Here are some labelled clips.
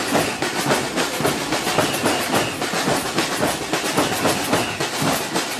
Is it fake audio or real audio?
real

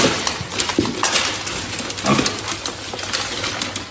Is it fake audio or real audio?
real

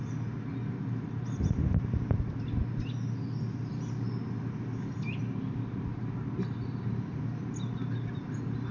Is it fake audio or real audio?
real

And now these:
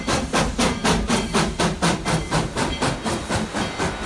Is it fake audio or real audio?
real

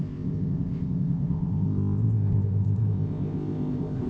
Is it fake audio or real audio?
fake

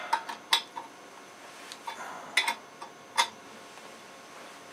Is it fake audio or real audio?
real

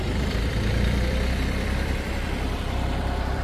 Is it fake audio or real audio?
fake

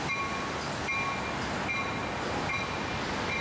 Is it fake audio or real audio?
real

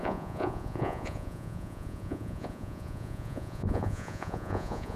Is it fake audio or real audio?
fake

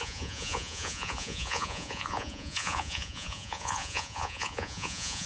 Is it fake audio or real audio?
fake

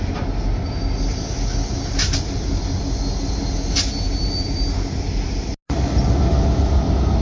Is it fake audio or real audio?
real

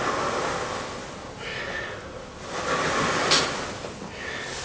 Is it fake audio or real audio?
real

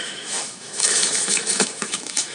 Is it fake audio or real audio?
fake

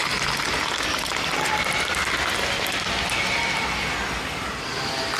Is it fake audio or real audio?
real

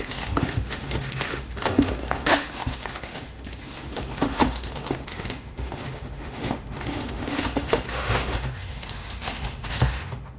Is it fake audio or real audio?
fake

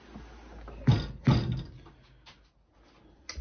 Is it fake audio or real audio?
real